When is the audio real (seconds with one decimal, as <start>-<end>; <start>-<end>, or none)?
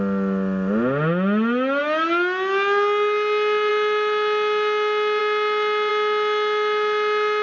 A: 0.0-7.4